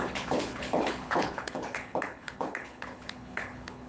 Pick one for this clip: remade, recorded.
remade